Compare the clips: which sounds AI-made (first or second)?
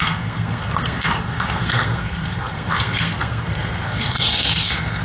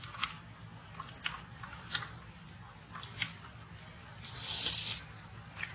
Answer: first